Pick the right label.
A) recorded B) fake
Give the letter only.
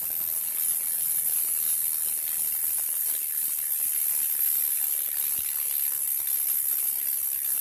A